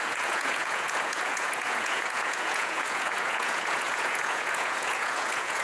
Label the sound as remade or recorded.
remade